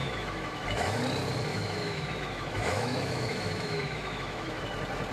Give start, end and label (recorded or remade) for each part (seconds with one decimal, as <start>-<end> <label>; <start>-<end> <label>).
0.0-1.0 remade; 1.0-1.5 recorded; 1.5-4.6 remade; 4.6-5.1 recorded